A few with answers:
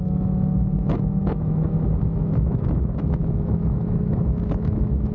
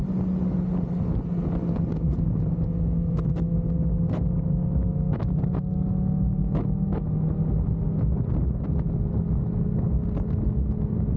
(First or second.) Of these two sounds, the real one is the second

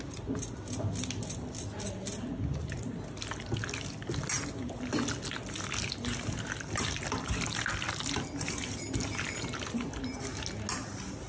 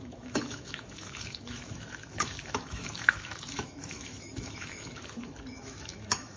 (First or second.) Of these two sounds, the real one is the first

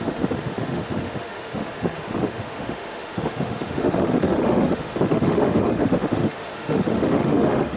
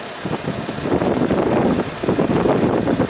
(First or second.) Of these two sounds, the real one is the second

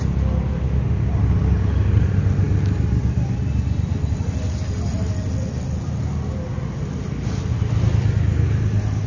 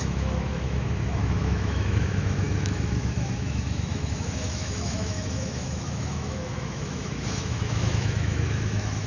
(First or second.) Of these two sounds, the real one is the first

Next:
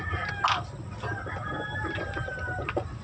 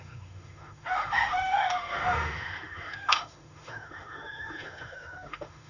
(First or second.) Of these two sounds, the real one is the first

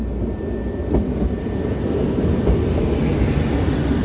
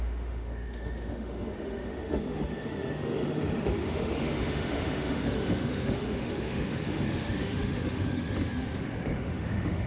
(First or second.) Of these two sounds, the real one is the first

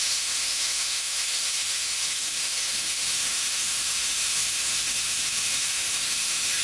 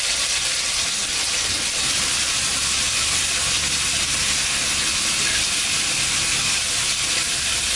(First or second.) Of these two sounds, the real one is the second